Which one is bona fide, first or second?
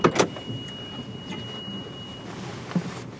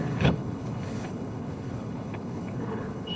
first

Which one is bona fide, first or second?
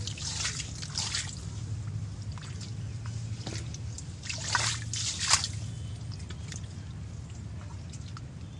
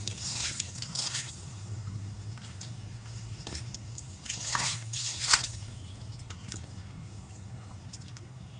first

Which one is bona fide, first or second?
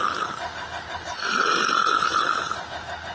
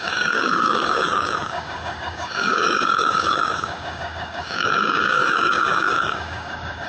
first